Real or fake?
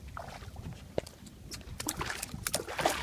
real